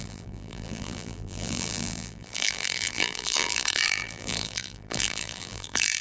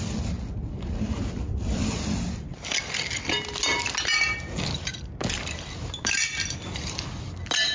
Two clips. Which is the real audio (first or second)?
second